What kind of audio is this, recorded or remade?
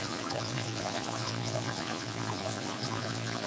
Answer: remade